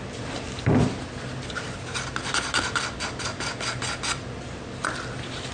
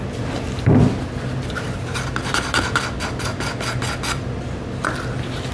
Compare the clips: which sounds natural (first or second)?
second